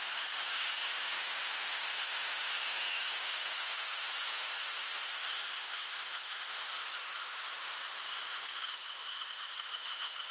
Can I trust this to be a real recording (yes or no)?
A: no